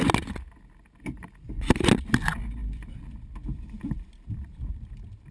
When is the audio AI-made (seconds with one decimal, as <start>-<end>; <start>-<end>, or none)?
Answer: 2.6-5.3